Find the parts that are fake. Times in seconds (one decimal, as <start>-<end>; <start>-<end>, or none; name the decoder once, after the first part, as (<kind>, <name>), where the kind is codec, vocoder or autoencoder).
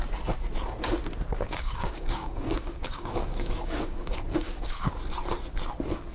1.3-4.9 (codec, DAC)